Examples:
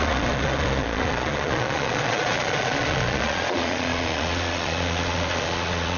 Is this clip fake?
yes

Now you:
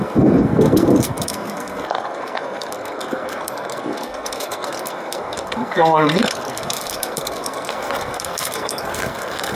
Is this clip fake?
yes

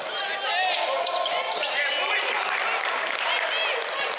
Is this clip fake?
no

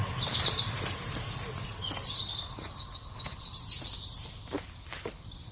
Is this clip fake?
no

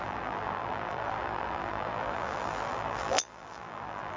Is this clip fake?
yes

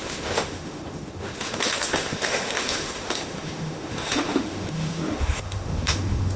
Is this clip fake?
yes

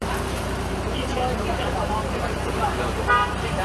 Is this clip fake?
yes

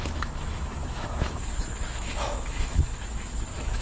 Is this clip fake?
yes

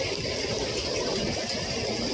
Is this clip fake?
no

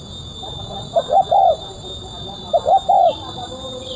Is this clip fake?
no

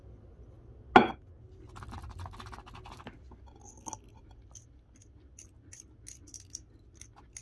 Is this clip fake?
no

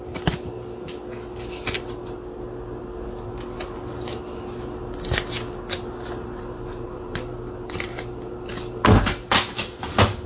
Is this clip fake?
no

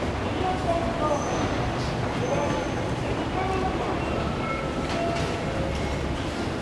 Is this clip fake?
no